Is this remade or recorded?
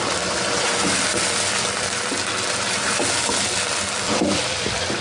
recorded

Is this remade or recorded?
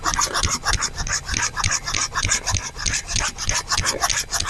recorded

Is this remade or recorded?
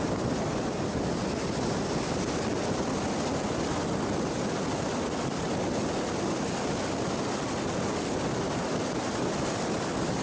recorded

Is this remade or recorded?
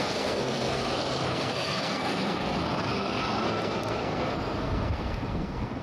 remade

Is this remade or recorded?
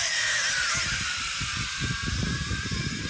remade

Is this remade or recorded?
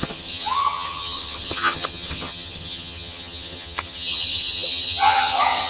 remade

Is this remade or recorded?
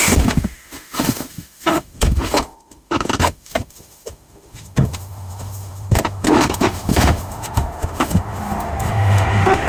remade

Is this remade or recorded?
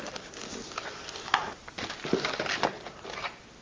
recorded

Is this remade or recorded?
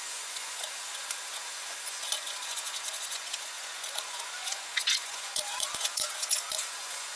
remade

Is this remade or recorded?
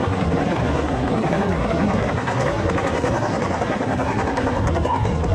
remade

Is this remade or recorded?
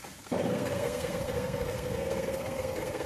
remade